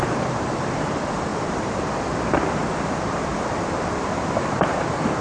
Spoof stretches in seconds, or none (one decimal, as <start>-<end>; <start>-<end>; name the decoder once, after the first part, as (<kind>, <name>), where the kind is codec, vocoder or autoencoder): 0.0-1.3 (vocoder, BigVGAN v2); 4.4-5.2